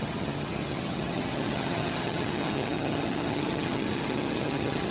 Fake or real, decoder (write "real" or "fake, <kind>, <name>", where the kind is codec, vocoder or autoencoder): fake, vocoder, HiFi-GAN